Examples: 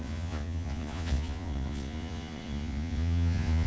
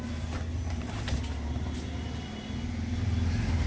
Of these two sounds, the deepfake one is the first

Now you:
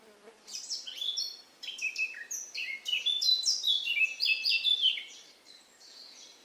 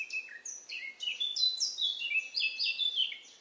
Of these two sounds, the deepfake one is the first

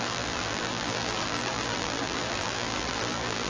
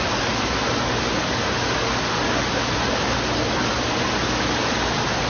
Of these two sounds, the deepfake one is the first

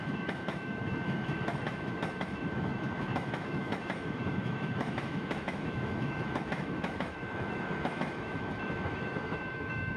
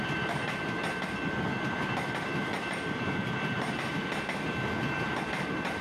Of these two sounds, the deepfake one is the first